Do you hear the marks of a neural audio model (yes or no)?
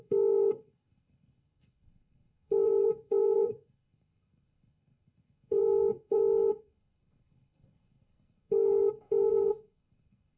yes